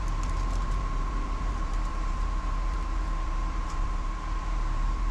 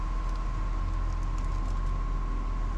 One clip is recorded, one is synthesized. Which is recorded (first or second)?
second